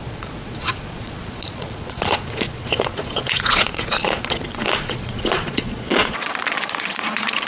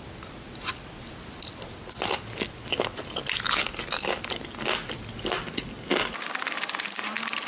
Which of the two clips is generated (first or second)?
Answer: first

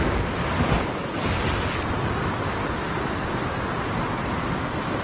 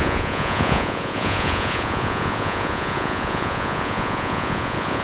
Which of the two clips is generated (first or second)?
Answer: second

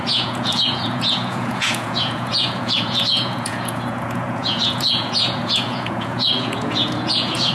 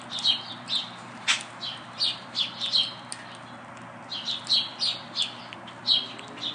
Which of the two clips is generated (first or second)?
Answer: first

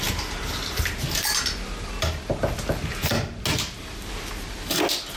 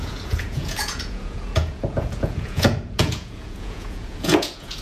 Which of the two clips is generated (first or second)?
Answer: second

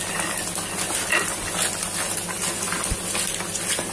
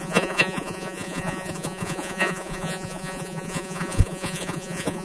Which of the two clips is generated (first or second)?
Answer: second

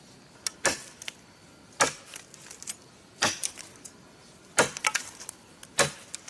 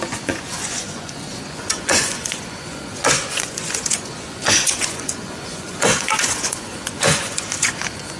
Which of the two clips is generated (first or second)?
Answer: second